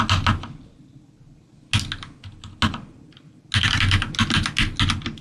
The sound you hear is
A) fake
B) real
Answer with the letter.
B